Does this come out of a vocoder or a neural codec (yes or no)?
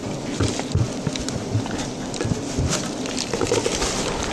no